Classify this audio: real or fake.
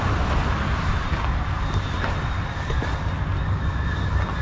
real